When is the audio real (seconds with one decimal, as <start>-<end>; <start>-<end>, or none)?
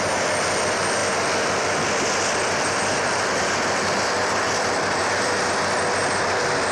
0.0-6.7